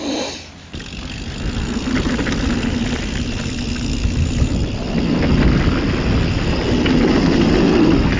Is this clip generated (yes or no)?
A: no